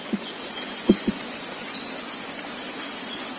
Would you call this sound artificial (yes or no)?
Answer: yes